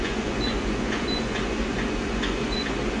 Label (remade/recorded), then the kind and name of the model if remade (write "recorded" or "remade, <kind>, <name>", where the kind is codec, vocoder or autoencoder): remade, vocoder, Vocos